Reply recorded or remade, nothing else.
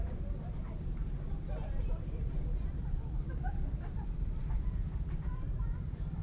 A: remade